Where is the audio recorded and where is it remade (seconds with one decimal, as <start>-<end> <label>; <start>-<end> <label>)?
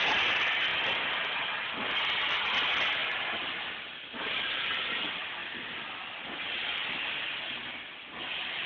0.0-8.7 recorded